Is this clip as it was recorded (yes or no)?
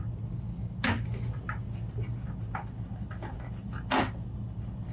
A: yes